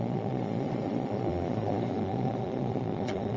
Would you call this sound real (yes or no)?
no